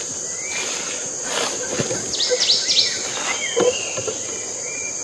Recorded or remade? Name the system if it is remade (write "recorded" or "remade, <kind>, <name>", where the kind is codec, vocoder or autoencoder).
recorded